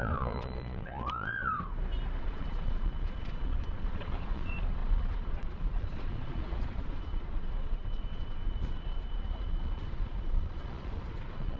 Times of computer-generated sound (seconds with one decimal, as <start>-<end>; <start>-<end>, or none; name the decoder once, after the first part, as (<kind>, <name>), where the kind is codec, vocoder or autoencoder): 0.0-1.5 (vocoder, Vocos); 2.2-11.6